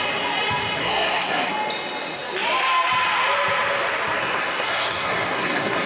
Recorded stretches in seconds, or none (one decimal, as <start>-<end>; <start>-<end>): 0.0-0.8; 1.5-4.2